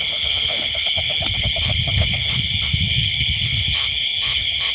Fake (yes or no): yes